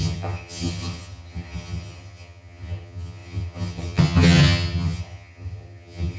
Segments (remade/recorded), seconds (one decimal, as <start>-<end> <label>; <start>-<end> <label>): 0.0-6.2 remade